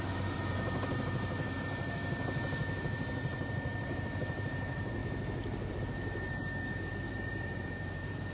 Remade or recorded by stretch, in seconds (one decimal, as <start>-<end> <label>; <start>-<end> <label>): 0.0-5.0 remade; 5.0-5.7 recorded; 5.7-6.4 remade; 6.4-7.1 recorded; 7.1-8.3 remade